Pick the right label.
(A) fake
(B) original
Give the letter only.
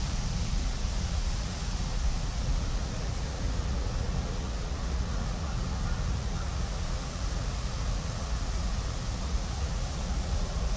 A